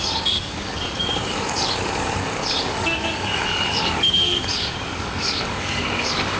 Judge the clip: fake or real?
fake